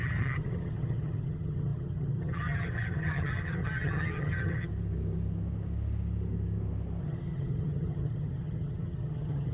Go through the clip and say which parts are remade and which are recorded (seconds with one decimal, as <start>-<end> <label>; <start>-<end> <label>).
0.0-4.7 remade; 4.7-7.0 recorded; 7.0-9.5 remade